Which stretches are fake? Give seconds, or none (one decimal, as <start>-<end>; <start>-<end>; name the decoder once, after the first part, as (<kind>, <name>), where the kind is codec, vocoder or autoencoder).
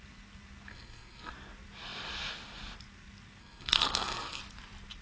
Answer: 0.7-1.3 (codec, SNAC); 3.4-4.4